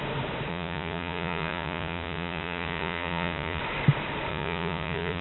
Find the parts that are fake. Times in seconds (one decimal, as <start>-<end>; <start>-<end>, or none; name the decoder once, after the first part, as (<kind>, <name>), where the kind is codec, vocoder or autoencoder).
0.5-3.6 (vocoder, Vocos); 4.3-5.2